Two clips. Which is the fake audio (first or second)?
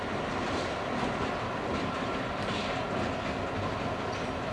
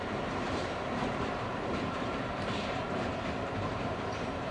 second